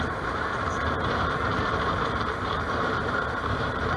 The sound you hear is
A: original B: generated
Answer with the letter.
B